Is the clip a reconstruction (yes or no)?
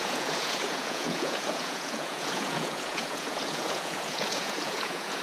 yes